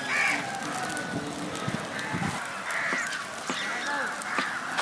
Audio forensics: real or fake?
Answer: real